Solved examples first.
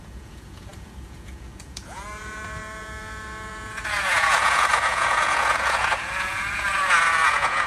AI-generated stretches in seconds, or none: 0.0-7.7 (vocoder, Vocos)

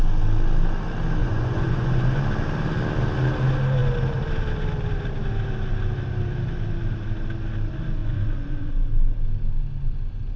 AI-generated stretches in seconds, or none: 1.2-2.2 (vocoder, Vocos); 8.0-8.9

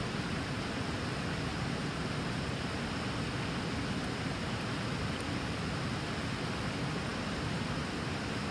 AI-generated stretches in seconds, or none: none

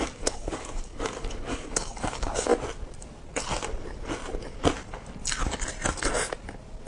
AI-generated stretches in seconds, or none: 0.0-2.5 (codec, DAC)

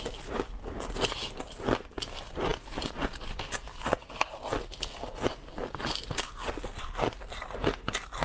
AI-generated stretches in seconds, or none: none

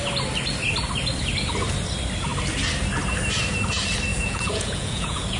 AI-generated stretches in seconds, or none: 4.1-5.4 (vocoder, Vocos)

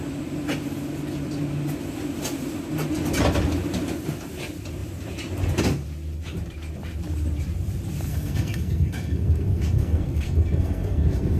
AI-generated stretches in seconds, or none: 8.1-11.4 (codec, SNAC)